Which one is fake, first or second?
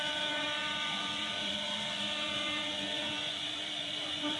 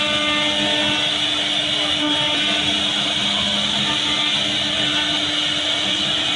first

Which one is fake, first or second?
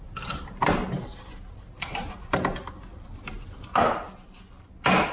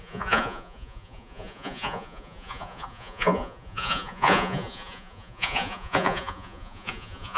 second